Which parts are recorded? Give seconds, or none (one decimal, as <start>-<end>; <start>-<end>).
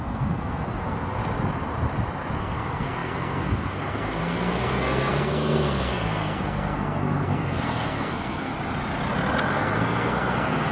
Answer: 1.2-2.4; 8.5-9.5